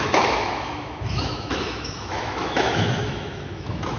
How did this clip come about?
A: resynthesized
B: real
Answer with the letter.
A